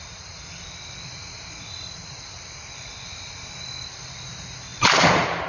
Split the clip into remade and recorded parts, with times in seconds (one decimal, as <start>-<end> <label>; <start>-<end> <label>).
0.0-5.5 recorded